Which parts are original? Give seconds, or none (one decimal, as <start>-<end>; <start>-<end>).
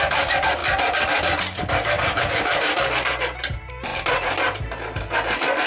0.6-1.7; 3.9-5.7